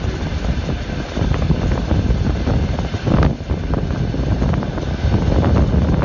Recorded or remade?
recorded